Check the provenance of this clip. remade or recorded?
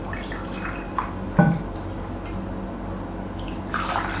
recorded